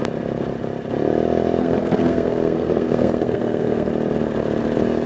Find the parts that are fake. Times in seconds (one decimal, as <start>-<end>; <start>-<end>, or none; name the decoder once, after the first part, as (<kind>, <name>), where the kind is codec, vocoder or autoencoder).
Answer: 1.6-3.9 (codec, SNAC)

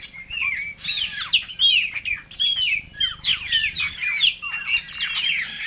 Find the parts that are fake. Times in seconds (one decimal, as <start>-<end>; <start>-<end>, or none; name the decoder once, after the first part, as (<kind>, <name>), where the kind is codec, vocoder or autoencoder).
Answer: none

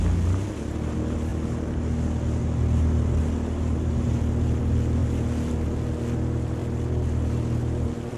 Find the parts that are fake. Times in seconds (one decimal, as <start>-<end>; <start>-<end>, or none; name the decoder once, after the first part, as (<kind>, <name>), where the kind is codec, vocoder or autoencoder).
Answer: none